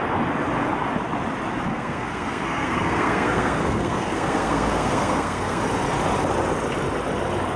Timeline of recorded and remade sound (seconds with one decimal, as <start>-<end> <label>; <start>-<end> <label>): 0.0-1.7 recorded; 1.7-5.6 remade; 5.6-7.6 recorded